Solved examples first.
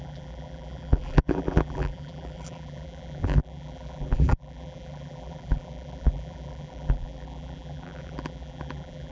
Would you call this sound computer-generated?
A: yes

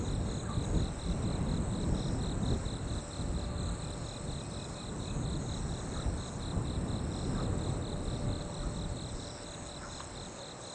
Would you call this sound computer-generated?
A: no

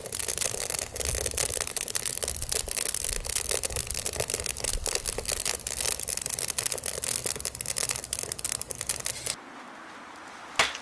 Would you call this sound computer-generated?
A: no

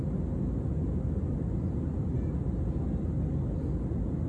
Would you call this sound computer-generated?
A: no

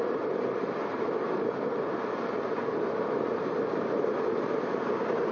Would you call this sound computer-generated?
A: no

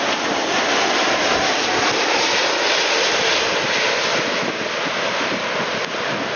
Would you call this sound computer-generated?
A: no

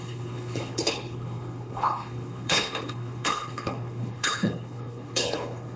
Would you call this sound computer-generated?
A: yes